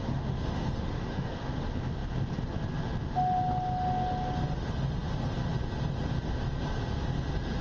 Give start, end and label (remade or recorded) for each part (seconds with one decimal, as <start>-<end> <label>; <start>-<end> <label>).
0.0-1.5 remade; 1.5-7.6 recorded